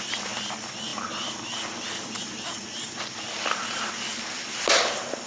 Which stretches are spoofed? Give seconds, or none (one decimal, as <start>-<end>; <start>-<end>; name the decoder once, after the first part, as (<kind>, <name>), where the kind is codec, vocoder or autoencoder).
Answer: none